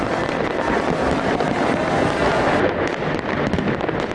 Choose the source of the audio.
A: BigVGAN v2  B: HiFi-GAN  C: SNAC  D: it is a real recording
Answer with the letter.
D